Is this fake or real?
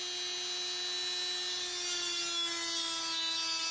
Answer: real